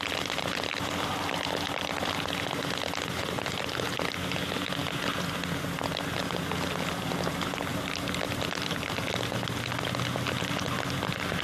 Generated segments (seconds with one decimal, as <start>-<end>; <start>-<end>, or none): none